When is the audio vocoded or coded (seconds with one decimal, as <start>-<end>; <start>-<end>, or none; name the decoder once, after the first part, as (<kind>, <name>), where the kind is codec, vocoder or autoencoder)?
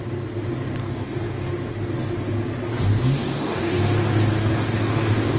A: 0.8-1.5 (codec, DAC); 3.2-3.8; 4.4-5.4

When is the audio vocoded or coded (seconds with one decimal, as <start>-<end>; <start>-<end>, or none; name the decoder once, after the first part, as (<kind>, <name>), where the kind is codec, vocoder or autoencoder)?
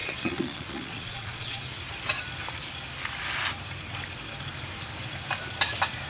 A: 0.0-1.6 (vocoder, Vocos)